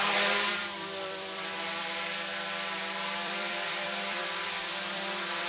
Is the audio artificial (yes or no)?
yes